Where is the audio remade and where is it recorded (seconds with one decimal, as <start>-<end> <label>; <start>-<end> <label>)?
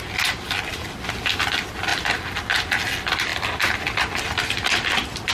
0.0-5.3 recorded